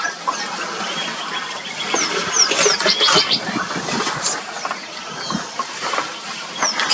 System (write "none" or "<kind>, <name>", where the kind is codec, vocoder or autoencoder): none